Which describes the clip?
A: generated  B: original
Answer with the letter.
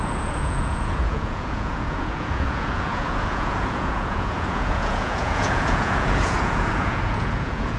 A